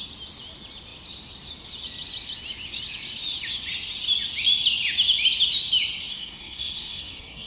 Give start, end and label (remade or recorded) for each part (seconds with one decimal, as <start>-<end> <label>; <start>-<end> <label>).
0.0-6.1 recorded; 6.1-7.5 remade